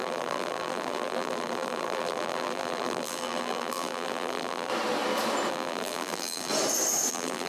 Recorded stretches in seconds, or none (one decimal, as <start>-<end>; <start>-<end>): 4.7-5.5; 6.5-7.1